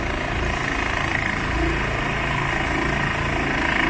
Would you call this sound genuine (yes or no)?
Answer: yes